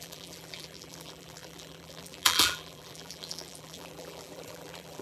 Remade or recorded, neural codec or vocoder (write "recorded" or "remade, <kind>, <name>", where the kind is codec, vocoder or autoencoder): remade, vocoder, BigVGAN v2